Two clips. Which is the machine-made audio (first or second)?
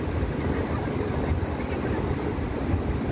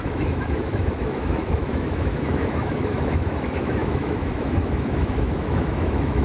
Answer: second